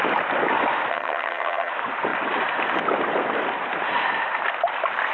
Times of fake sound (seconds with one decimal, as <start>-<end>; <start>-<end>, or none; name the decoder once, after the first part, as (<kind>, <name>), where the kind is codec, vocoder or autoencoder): 0.9-1.7 (vocoder, HiFi-GAN)